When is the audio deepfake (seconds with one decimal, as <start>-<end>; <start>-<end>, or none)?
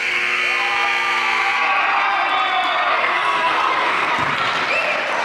0.0-0.4; 2.9-4.1